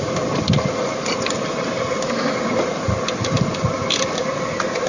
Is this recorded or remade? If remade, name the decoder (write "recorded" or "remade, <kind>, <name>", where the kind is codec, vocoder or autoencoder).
recorded